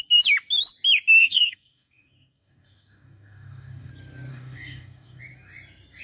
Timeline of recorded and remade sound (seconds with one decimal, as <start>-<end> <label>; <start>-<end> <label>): 0.0-1.2 recorded; 1.2-3.9 remade; 3.9-4.3 recorded; 4.3-5.2 remade; 5.2-6.0 recorded